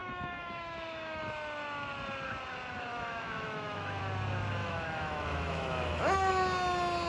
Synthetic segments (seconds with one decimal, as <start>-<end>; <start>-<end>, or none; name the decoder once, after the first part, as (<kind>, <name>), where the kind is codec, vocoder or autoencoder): 0.0-1.2 (autoencoder, DAC-VAE); 2.9-4.0; 4.6-6.3